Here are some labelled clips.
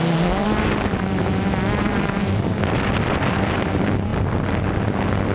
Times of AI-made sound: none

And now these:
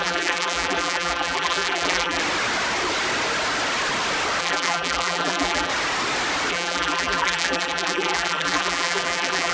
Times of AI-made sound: 0.0-2.2 (vocoder, BigVGAN v2); 4.4-5.7; 6.5-9.5

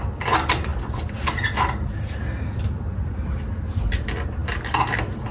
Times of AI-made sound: none

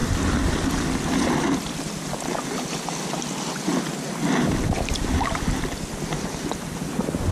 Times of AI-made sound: none

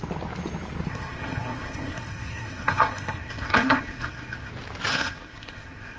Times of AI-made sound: 0.9-4.5 (codec, SNAC); 4.9-6.0

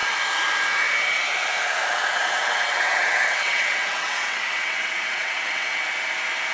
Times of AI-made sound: 1.9-5.8 (vocoder, WaveNeXt)

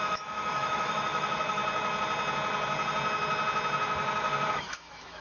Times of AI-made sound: 0.0-1.6 (autoencoder, DAC-VAE); 4.5-5.2

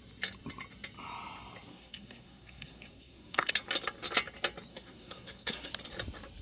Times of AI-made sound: 1.7-3.5 (codec, SNAC); 4.7-5.7